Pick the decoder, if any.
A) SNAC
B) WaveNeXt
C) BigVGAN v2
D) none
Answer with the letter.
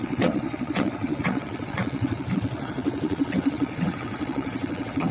B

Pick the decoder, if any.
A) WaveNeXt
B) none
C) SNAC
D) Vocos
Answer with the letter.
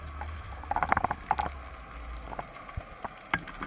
B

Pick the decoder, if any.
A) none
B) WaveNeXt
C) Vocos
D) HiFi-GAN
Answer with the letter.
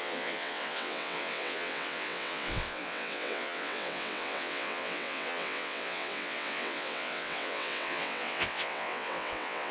B